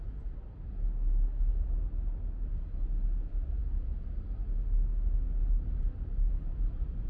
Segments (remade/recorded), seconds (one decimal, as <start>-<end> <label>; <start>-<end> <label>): 0.0-7.1 recorded